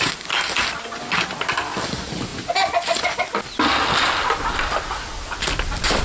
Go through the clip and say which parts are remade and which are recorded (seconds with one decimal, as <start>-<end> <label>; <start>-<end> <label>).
0.0-6.0 recorded